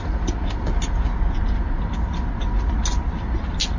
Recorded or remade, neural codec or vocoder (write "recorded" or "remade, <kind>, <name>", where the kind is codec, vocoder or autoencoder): recorded